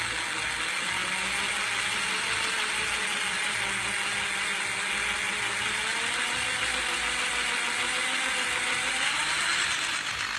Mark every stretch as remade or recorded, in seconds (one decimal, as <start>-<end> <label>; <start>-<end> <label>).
0.0-10.4 recorded